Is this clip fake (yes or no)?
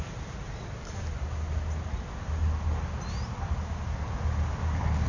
no